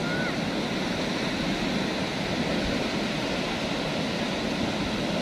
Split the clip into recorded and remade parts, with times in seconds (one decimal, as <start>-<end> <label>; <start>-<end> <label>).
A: 0.0-5.2 recorded